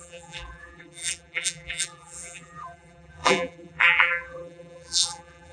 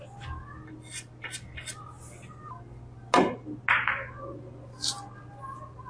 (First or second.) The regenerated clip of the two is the first